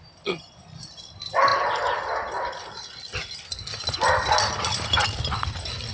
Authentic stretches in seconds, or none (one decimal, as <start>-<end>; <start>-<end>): 0.0-5.9